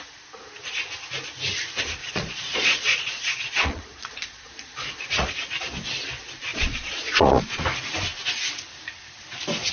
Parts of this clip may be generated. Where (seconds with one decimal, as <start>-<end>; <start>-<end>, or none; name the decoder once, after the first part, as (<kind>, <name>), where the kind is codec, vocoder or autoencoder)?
2.0-5.3 (vocoder, Vocos); 6.5-7.6